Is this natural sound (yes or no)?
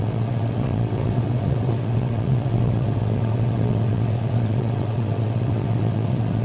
no